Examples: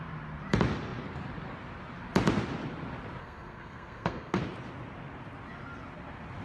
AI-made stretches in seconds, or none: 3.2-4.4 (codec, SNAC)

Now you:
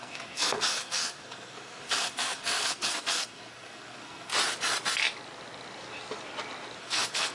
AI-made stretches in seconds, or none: 0.0-4.3 (codec, SNAC); 6.8-7.3

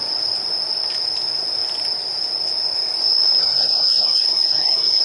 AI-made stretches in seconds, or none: 3.4-5.0 (codec, SNAC)

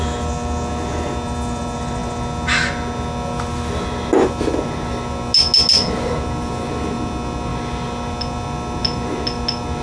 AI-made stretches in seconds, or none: none

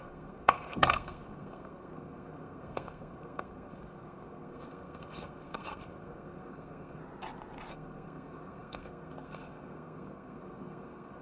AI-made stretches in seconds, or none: 0.0-7.0 (codec, SNAC); 7.7-11.2

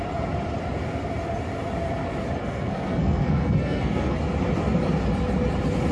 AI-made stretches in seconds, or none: 2.4-4.2 (codec, SNAC)